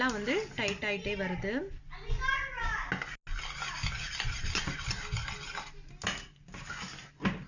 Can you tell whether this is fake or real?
real